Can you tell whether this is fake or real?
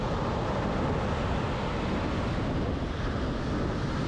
real